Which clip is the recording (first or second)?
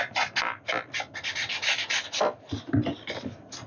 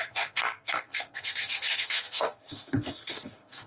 first